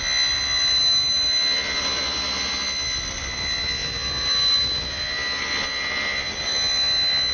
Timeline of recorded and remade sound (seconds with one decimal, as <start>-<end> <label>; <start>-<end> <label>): 0.0-7.3 recorded